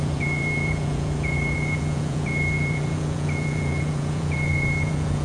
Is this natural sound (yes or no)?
no